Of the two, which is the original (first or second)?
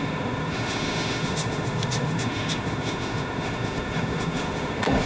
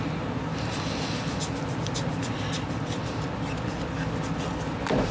second